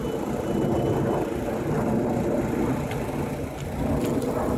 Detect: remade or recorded recorded